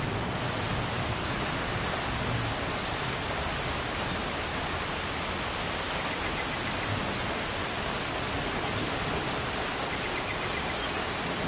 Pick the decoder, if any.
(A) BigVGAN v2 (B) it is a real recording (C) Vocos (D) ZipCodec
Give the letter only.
B